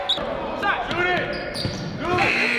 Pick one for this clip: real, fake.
real